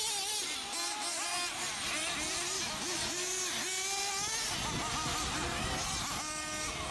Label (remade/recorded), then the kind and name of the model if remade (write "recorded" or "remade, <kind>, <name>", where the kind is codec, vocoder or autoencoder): recorded